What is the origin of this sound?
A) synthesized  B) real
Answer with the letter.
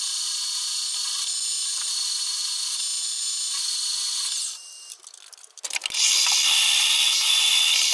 B